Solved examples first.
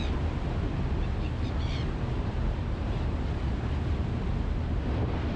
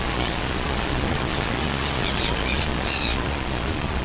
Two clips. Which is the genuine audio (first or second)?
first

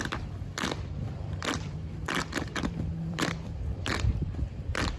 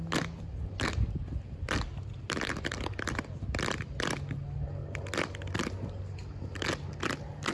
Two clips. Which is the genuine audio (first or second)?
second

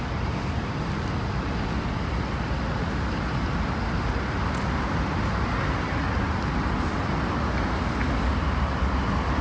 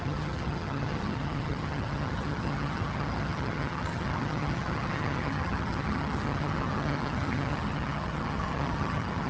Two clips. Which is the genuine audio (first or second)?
first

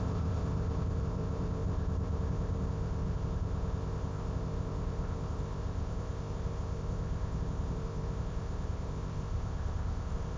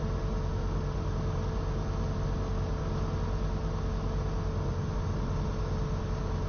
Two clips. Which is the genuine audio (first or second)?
second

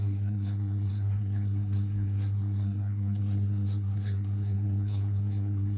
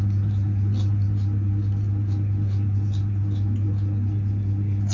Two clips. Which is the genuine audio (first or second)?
second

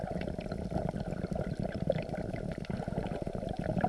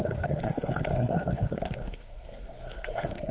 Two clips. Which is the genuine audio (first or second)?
first